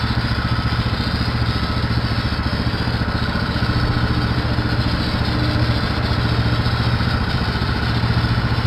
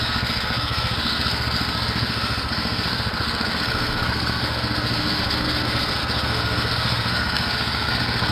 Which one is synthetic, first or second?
second